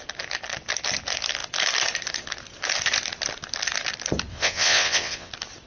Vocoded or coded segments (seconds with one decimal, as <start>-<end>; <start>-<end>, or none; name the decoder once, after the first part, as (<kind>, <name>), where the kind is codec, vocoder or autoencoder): 4.3-5.3 (vocoder, WaveNeXt)